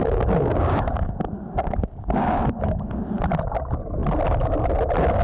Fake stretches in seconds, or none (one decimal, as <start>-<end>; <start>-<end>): 0.0-3.1

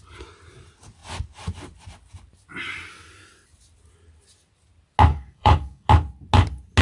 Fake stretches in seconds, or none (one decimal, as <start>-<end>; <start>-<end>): 5.1-5.9

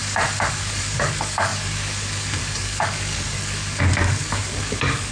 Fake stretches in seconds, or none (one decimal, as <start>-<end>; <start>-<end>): 0.5-5.1